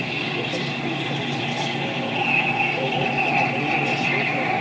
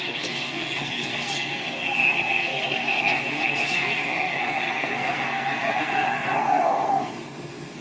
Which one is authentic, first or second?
first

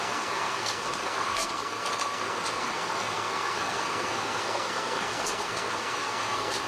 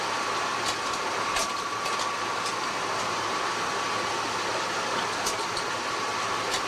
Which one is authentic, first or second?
second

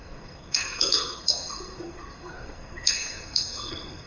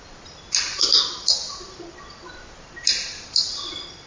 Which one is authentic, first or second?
second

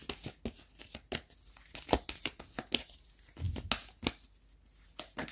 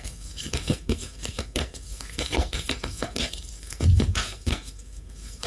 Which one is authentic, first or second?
first